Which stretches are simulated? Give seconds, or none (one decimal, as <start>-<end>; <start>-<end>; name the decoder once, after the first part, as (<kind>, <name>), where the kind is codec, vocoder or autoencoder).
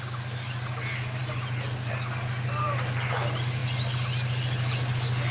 none